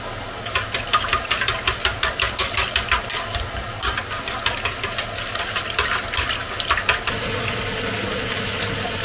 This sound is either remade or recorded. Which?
recorded